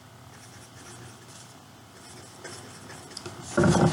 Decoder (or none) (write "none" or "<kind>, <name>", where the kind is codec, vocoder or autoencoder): none